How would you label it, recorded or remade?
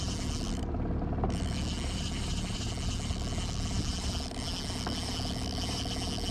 recorded